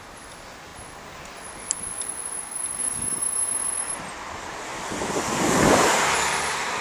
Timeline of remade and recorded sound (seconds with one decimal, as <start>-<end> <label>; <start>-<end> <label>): 0.0-6.8 recorded